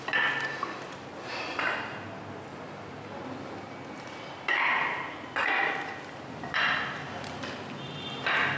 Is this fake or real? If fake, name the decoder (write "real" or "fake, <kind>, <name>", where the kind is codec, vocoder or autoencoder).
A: real